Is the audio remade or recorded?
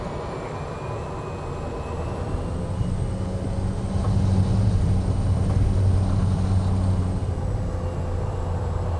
recorded